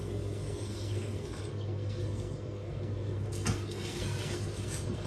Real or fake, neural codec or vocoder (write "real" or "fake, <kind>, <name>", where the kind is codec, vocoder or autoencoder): fake, codec, SNAC